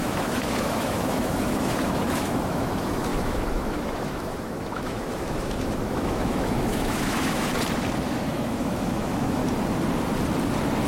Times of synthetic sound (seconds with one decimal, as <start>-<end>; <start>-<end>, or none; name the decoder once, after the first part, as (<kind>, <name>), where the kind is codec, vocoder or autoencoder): 0.0-7.5 (autoencoder, DAC-VAE); 8.0-9.4